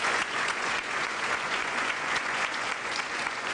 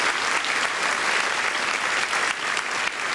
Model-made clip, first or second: first